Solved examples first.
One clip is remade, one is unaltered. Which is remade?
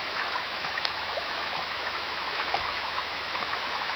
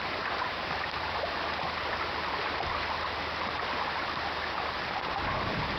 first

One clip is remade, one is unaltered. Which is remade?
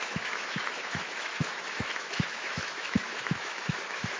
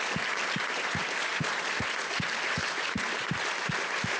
first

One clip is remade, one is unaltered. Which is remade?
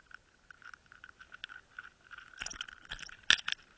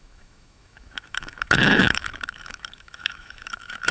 second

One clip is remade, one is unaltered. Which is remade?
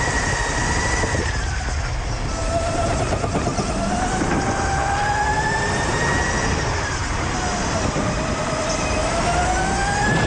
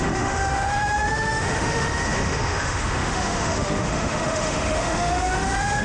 second